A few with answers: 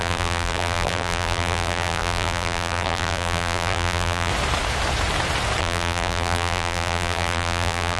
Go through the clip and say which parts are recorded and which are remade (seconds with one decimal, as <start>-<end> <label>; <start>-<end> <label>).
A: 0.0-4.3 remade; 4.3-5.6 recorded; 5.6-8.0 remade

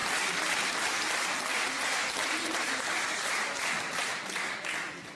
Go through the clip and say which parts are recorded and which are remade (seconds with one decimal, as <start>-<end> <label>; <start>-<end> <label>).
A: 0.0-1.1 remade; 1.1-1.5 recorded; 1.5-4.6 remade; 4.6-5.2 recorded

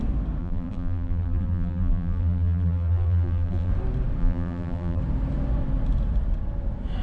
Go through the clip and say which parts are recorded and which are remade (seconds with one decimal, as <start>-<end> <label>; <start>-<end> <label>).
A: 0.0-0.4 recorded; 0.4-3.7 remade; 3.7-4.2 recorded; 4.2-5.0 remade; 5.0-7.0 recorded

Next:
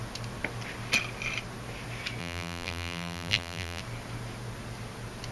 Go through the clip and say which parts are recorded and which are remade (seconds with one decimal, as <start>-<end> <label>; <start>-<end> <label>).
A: 0.0-2.2 recorded; 2.2-3.8 remade; 3.8-5.3 recorded